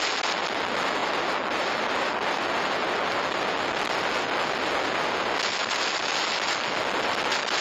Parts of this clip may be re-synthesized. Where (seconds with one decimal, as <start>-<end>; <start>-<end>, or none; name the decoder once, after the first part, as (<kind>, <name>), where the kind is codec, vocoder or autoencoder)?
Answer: none